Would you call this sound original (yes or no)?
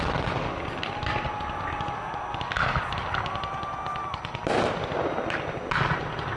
yes